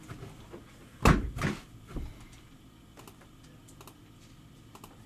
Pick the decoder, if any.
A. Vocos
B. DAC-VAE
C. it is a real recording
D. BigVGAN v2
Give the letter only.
C